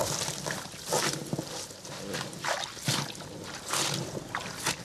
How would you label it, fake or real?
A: real